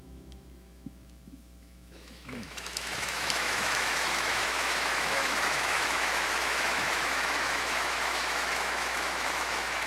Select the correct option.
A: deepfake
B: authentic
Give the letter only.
A